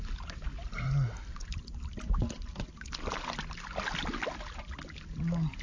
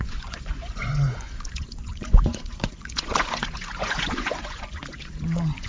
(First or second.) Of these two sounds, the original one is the first